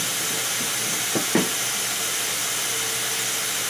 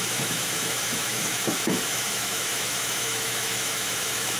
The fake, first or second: second